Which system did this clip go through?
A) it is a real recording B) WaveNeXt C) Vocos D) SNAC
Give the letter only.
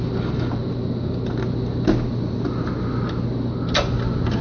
A